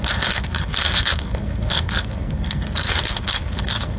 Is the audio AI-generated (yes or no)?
yes